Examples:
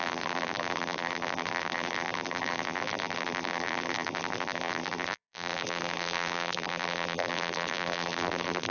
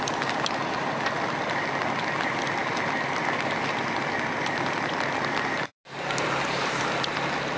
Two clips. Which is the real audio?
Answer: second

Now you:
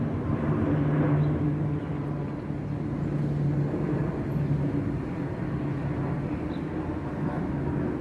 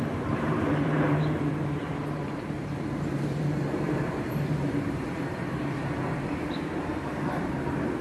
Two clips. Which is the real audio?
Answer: first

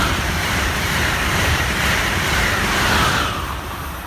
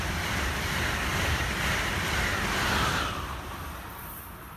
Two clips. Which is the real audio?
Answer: second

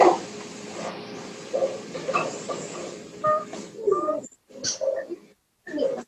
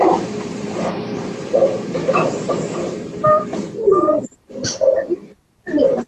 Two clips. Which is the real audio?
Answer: first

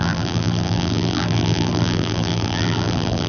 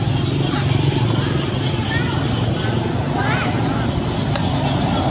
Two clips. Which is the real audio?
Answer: second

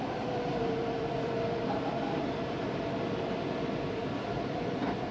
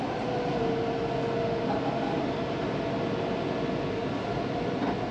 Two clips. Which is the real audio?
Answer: second